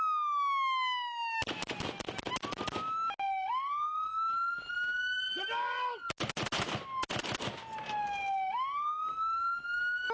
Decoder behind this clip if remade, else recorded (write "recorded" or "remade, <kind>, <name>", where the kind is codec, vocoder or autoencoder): recorded